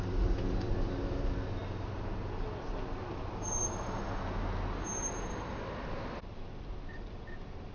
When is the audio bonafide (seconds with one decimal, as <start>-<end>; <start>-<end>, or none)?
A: 0.0-7.7